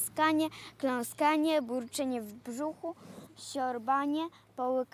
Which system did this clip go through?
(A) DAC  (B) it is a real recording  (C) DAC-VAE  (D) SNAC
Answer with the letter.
B